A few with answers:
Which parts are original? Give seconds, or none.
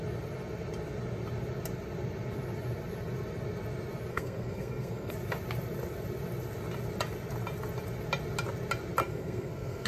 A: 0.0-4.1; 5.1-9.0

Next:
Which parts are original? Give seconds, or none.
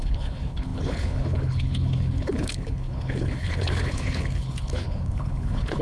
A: none